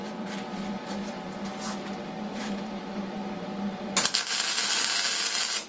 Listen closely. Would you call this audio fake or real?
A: fake